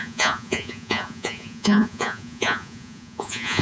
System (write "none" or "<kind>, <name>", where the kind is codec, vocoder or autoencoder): vocoder, Vocos